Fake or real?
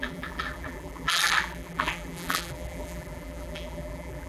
fake